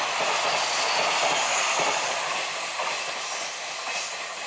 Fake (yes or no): no